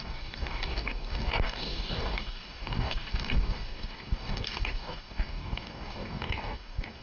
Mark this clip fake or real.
fake